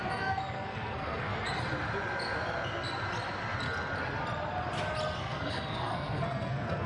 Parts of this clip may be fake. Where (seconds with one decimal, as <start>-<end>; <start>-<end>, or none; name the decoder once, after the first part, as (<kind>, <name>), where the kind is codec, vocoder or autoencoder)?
0.0-1.4 (codec, SNAC); 5.2-6.9